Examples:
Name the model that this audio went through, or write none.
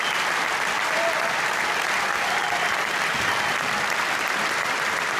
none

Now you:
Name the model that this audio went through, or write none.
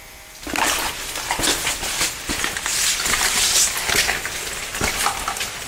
none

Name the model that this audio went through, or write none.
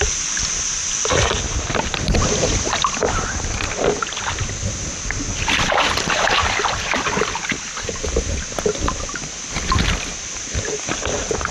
none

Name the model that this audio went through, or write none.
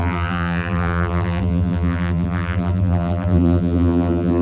vocoder, BigVGAN v2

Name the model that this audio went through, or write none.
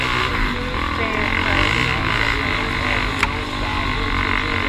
none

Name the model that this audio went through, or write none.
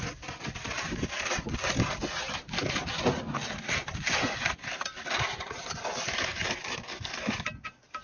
vocoder, BigVGAN v2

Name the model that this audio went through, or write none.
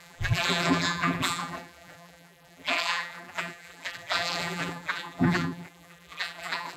vocoder, BigVGAN v2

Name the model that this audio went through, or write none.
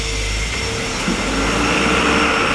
none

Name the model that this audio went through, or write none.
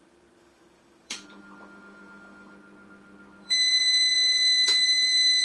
vocoder, BigVGAN v2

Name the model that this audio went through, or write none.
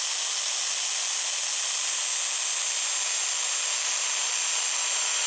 none